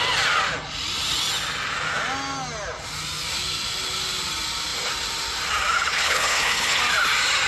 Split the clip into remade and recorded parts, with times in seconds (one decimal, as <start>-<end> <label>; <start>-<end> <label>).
0.0-5.9 recorded; 5.9-6.8 remade; 6.8-7.5 recorded